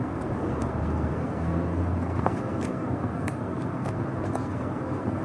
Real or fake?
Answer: fake